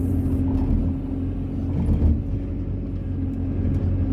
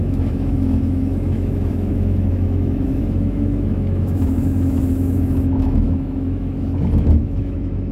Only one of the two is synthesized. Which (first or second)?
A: second